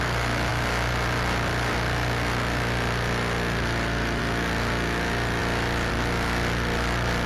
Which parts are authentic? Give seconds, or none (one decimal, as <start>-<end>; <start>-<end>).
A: 0.0-7.3